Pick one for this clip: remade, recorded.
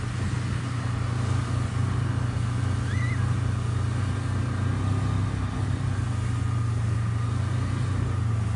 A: recorded